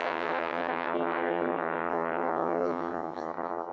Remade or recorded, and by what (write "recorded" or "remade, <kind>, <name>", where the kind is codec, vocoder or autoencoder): remade, vocoder, HiFi-GAN